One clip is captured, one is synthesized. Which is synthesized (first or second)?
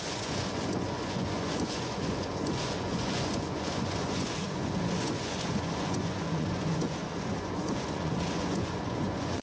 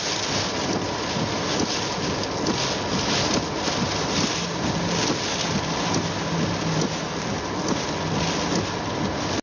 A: first